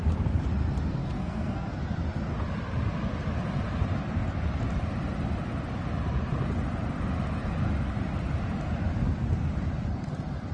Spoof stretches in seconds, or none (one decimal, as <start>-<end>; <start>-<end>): 1.0-1.7